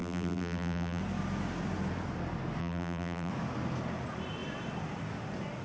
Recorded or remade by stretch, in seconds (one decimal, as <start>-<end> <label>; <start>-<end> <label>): 0.0-1.0 remade; 1.0-2.6 recorded; 2.6-3.3 remade; 3.3-5.6 recorded